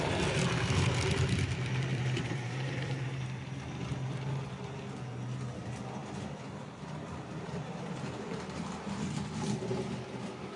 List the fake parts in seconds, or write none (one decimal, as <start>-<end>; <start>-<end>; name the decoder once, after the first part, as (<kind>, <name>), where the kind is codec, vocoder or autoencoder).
1.9-3.9 (vocoder, BigVGAN v2); 6.0-9.0